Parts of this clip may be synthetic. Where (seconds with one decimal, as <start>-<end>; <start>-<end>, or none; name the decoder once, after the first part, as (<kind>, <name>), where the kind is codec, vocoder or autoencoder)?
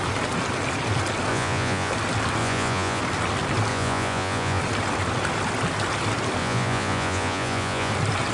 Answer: 1.3-1.9 (vocoder, Vocos); 2.4-3.0; 3.7-4.6; 6.4-7.9